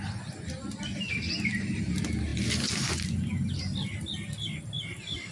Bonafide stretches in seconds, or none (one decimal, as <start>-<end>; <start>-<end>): 0.0-5.3